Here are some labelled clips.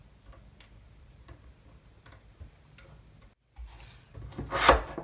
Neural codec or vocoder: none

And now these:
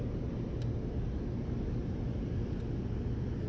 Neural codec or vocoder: none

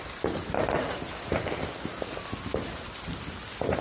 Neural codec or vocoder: vocoder, BigVGAN v2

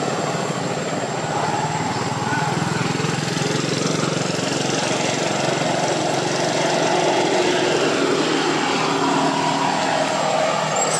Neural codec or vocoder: none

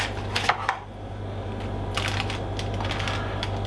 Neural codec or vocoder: none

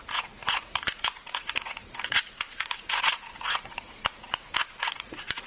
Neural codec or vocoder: vocoder, Vocos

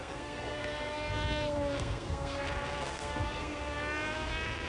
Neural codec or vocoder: codec, SNAC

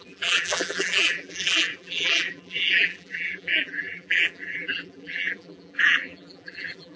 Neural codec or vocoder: vocoder, BigVGAN v2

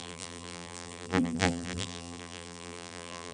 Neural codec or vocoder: vocoder, BigVGAN v2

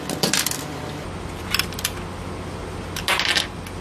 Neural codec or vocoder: none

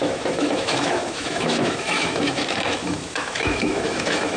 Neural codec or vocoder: autoencoder, DAC-VAE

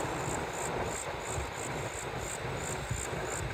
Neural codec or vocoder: none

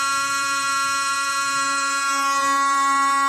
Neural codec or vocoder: vocoder, BigVGAN v2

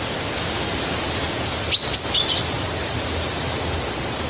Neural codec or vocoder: none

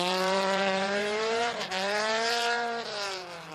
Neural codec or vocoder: vocoder, BigVGAN v2